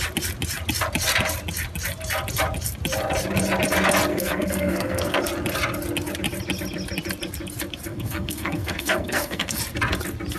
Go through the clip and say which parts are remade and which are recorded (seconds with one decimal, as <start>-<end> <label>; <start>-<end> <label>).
0.0-4.1 recorded; 4.1-5.2 remade; 5.2-7.9 recorded; 7.9-9.6 remade; 9.6-10.4 recorded